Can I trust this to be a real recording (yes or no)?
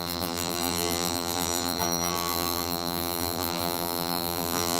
no